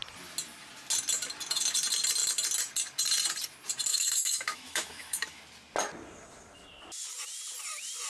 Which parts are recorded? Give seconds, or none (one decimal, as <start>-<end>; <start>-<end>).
0.0-3.9; 5.4-8.1